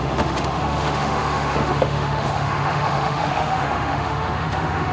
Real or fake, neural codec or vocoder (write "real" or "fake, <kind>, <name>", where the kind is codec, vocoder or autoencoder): fake, autoencoder, DAC-VAE